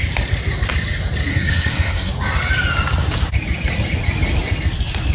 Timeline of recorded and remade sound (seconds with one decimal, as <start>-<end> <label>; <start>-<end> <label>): 0.0-1.3 recorded; 1.3-2.1 remade; 2.1-5.1 recorded